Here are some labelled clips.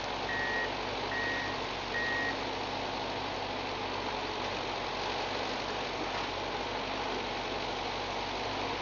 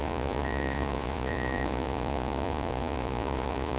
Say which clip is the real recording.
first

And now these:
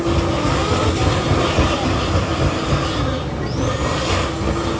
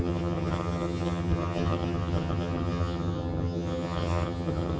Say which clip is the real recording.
first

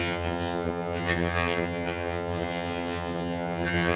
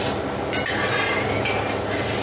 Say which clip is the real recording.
second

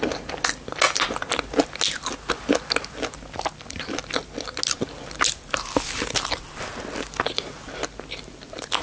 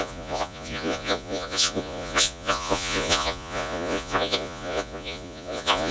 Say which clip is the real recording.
first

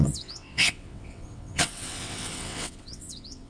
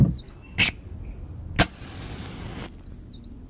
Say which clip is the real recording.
second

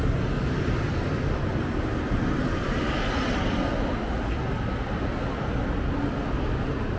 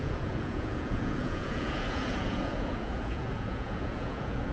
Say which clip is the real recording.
first